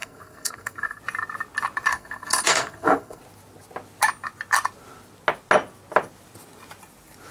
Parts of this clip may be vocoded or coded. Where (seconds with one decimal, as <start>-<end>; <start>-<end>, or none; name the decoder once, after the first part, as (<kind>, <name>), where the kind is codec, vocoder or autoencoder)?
0.0-1.0 (codec, SNAC); 1.9-3.2